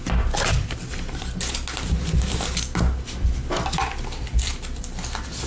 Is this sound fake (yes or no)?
no